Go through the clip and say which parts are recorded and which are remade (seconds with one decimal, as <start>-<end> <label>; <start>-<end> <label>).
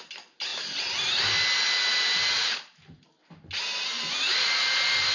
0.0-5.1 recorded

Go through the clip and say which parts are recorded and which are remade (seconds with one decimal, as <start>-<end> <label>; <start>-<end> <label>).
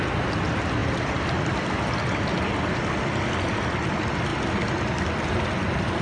0.0-6.0 recorded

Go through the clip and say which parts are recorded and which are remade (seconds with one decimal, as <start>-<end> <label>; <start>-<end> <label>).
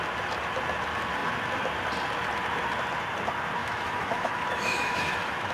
0.0-3.6 recorded; 3.6-5.5 remade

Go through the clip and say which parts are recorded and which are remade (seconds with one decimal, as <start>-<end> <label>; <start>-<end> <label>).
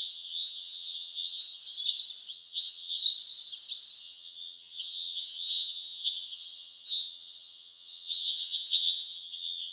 0.0-1.6 remade; 1.6-2.3 recorded; 2.3-3.0 remade; 3.0-4.0 recorded; 4.0-9.7 remade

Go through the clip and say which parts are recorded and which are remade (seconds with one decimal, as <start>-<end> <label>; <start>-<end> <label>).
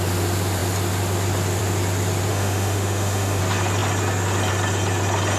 0.0-2.3 recorded; 2.3-3.4 remade; 3.4-5.4 recorded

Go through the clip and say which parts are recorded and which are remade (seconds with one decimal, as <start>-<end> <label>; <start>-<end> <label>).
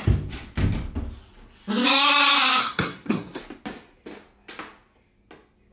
0.0-2.6 recorded; 2.6-3.4 remade; 3.4-5.7 recorded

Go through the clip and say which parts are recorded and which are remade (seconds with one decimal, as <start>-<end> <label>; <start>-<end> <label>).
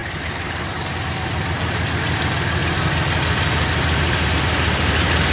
0.0-1.3 remade; 1.3-5.3 recorded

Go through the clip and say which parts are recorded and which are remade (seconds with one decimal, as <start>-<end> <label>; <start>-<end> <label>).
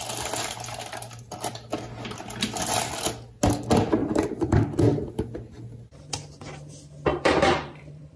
0.0-4.0 recorded; 4.0-4.8 remade; 4.8-7.1 recorded; 7.1-8.2 remade